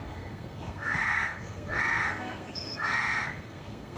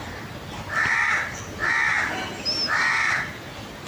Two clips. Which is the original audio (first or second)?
second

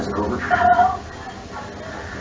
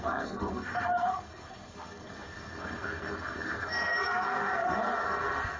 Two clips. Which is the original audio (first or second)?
first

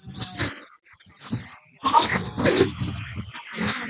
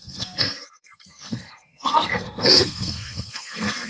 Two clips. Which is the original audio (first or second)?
first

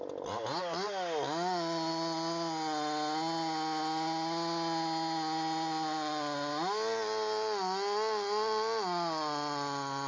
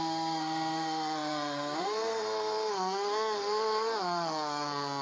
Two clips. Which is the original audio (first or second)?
first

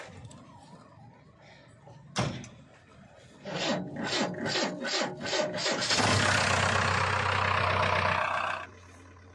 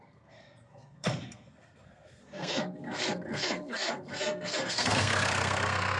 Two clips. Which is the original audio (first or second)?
first